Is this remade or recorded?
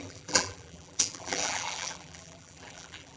remade